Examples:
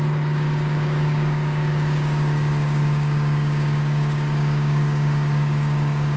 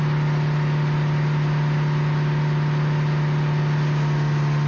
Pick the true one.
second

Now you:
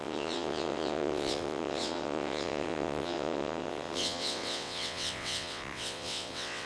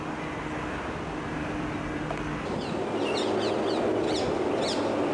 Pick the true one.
second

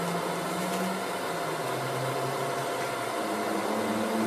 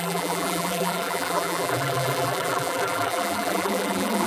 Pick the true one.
first